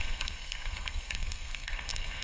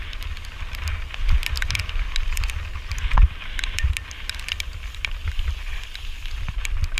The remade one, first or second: first